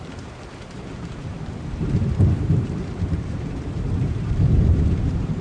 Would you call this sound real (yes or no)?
no